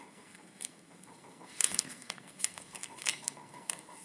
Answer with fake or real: fake